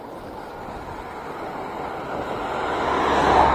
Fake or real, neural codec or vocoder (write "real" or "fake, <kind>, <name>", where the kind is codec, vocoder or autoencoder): real